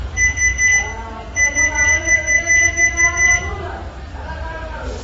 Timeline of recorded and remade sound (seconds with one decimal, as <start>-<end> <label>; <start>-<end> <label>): 0.0-0.4 remade; 0.4-1.5 recorded; 1.5-2.2 remade; 2.2-3.3 recorded; 3.3-5.0 remade

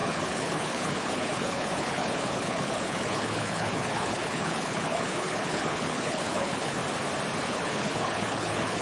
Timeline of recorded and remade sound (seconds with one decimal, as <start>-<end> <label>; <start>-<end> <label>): 0.0-6.8 remade; 6.8-7.4 recorded; 7.4-8.8 remade

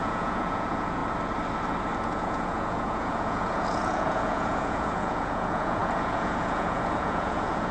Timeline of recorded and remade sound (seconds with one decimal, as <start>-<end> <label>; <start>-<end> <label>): 0.0-1.0 remade; 1.0-2.0 recorded; 2.0-7.7 remade

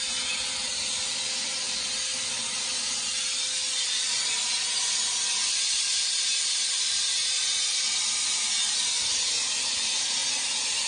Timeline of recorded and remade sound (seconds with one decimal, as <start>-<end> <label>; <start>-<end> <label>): 0.0-10.9 recorded